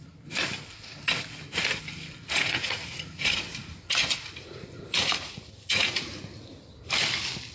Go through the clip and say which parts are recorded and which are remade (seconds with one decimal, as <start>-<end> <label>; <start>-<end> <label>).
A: 0.0-2.3 recorded; 2.3-6.1 remade; 6.1-7.5 recorded